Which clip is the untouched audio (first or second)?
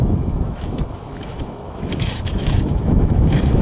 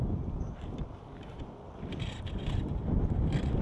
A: second